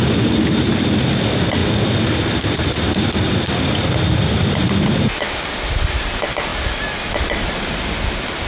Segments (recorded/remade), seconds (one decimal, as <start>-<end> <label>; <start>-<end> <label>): 0.0-8.5 recorded